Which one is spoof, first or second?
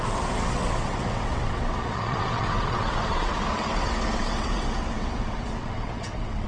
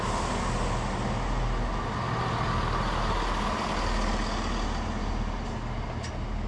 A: first